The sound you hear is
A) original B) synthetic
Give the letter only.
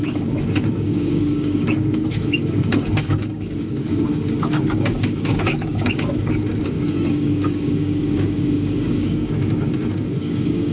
B